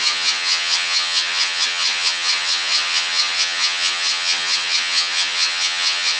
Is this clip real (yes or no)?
no